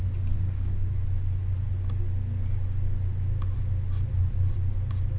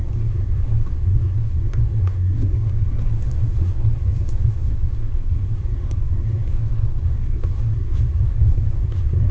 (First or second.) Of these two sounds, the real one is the first